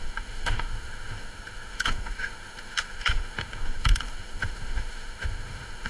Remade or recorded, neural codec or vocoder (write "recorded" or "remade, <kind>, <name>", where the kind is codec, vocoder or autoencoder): remade, autoencoder, DAC-VAE